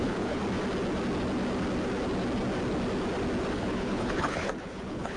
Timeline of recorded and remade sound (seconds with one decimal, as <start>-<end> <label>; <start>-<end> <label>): 0.0-0.4 remade; 0.4-3.5 recorded; 3.5-5.2 remade